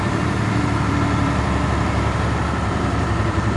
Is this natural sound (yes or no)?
no